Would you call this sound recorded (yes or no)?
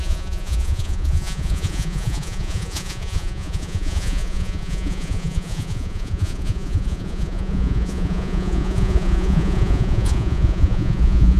no